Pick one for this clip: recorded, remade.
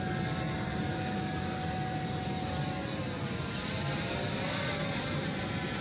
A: recorded